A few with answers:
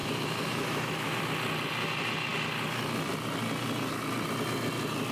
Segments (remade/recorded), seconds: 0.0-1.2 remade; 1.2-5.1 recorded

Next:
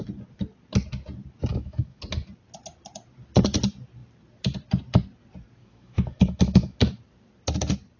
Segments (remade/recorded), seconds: 0.0-1.5 recorded; 1.5-2.0 remade; 2.0-5.6 recorded; 5.6-6.8 remade; 6.8-8.0 recorded